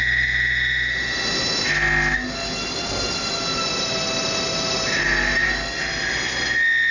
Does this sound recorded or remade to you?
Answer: recorded